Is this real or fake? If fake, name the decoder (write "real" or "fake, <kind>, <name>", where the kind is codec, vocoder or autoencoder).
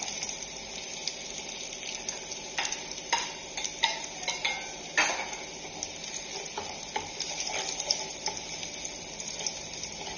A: real